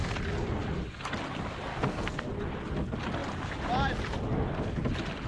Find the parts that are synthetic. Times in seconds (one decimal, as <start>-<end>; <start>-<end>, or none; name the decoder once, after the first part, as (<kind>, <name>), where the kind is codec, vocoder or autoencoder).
1.7-2.3 (codec, SNAC)